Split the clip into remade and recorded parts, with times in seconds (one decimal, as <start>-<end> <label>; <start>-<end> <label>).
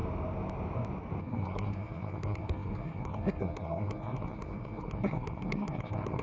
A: 0.0-1.2 recorded; 1.2-6.2 remade